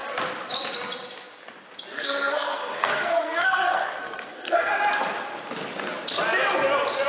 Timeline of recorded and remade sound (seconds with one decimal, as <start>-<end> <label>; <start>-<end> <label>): 0.0-1.9 recorded; 1.9-4.7 remade; 4.7-7.1 recorded